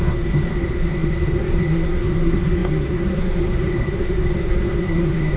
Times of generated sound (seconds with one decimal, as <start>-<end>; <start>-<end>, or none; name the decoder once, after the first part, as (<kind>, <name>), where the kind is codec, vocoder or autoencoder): 0.0-5.4 (codec, SNAC)